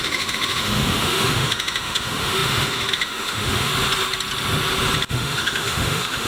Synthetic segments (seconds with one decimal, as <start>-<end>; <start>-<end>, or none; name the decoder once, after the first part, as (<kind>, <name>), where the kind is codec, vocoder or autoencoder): 0.0-3.7 (autoencoder, DAC-VAE); 5.1-6.3